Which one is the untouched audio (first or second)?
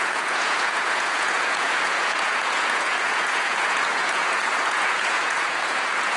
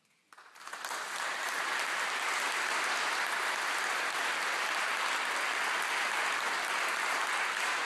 second